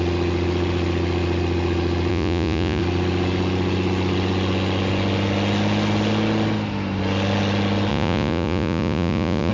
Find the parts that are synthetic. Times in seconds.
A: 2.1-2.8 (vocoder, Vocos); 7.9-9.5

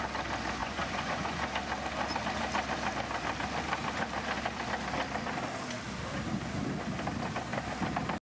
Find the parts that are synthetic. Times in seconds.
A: 0.6-1.5 (vocoder, Vocos)

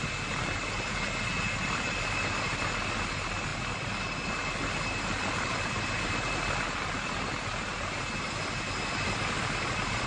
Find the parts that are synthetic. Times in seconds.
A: none

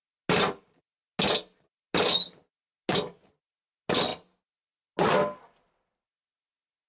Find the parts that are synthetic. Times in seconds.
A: none

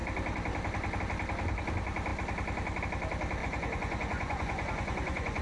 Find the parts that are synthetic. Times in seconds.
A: 3.4-5.4 (vocoder, Vocos)

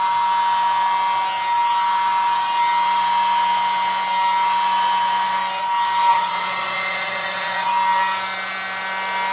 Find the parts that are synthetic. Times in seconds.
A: 6.1-7.7 (vocoder, Vocos)

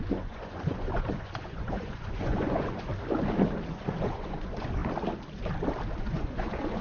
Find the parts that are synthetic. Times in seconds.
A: 0.0-2.9 (vocoder, Vocos); 3.7-4.8; 6.0-6.8

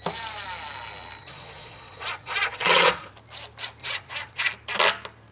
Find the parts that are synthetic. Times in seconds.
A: 1.2-3.1 (vocoder, Vocos); 3.8-4.5